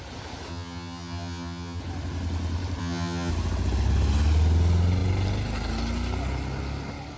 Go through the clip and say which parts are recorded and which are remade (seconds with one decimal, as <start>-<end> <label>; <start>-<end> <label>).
0.0-0.5 recorded; 0.5-1.8 remade; 1.8-2.8 recorded; 2.8-3.3 remade; 3.3-7.2 recorded